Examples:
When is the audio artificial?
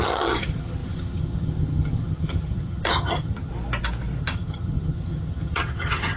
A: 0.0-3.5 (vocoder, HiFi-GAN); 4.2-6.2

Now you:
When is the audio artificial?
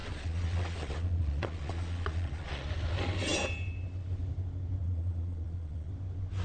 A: 0.0-2.7 (vocoder, Vocos); 4.8-5.9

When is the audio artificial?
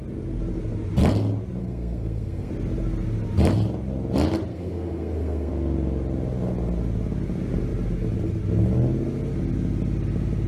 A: 1.6-2.5 (codec, SNAC); 4.5-5.5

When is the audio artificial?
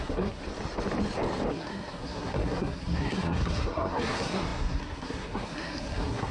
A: 0.0-0.4 (codec, SNAC); 1.5-6.3